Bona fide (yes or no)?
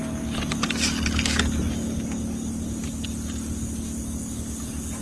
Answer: yes